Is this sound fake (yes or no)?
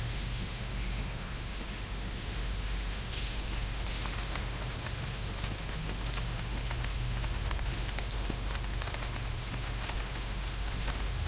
yes